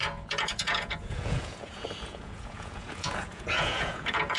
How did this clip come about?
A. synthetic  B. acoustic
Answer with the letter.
A